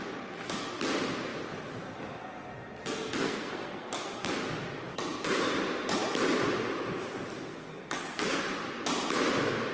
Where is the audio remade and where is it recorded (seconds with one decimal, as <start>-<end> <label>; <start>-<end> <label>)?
0.0-3.2 recorded; 3.2-4.3 remade; 4.3-7.5 recorded; 7.5-8.4 remade; 8.4-9.7 recorded